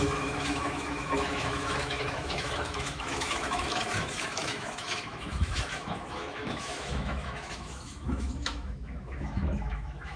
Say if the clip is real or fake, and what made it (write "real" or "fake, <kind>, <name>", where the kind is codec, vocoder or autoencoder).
fake, autoencoder, DAC-VAE